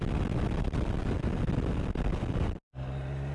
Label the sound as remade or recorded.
recorded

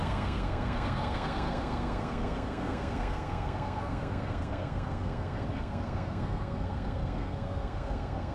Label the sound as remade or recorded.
remade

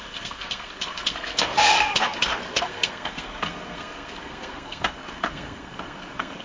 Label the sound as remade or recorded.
remade